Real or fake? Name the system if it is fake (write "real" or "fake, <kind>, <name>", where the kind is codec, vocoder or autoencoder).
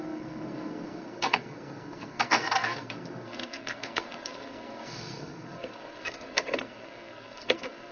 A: fake, codec, SNAC